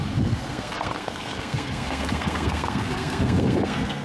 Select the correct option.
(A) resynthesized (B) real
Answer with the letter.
A